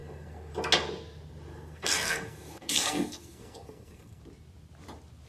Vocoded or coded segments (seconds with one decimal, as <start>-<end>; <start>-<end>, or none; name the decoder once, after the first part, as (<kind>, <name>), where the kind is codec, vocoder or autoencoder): 0.0-0.5 (codec, SNAC); 1.5-4.2

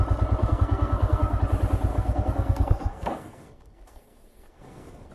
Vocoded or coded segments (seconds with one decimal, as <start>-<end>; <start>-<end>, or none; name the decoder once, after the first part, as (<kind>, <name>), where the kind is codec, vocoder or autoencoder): 0.4-1.4 (codec, SNAC); 1.9-5.1

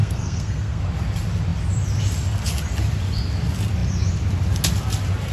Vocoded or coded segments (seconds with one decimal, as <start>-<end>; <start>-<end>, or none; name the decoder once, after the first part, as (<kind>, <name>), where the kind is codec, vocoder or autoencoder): 0.0-0.8 (codec, SNAC)